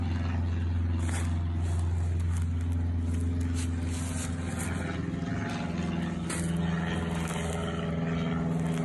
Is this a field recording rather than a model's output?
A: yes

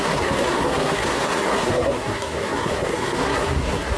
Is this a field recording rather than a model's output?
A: no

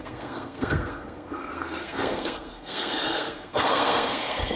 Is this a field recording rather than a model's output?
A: no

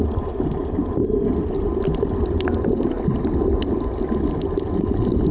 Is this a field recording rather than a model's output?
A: yes